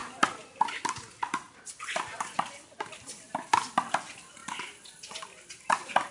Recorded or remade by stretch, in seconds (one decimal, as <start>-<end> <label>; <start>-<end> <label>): 0.0-6.1 recorded